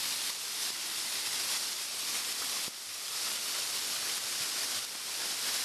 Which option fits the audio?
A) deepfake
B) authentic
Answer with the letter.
B